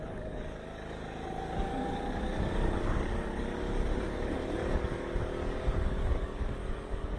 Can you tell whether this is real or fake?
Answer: fake